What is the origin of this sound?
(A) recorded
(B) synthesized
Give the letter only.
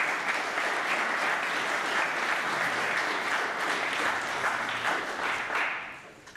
A